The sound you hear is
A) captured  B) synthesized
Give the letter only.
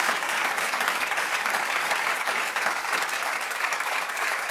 B